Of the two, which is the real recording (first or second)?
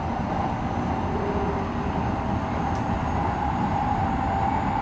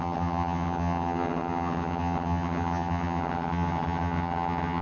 first